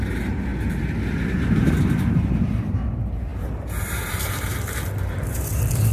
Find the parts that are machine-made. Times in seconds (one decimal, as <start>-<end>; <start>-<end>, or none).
0.0-0.5; 2.1-5.9